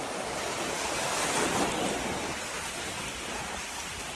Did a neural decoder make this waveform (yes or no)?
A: no